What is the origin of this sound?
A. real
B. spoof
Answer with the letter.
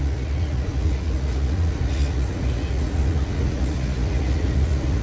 B